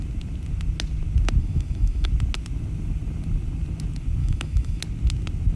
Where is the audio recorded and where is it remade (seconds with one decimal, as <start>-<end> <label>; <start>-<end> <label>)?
0.0-1.4 recorded; 1.4-2.1 remade; 2.1-4.2 recorded; 4.2-4.8 remade; 4.8-5.6 recorded